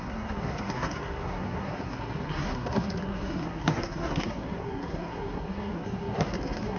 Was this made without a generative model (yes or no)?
no